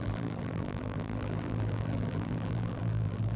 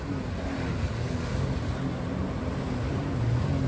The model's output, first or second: first